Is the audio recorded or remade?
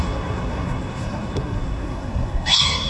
remade